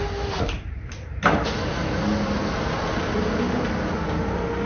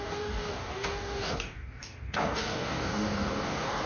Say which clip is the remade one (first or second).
second